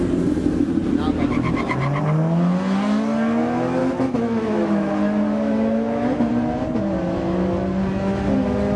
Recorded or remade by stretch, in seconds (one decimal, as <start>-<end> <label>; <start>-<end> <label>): 0.0-3.8 recorded; 3.8-6.3 remade; 6.3-8.8 recorded